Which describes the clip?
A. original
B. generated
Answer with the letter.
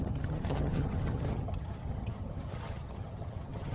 B